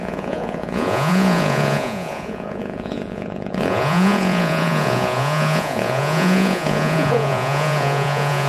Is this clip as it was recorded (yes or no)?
no